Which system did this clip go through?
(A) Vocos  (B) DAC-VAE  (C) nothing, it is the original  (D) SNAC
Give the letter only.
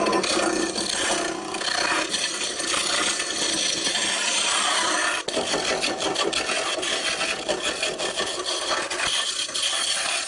C